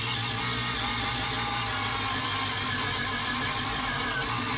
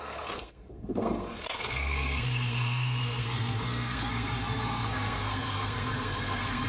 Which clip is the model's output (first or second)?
second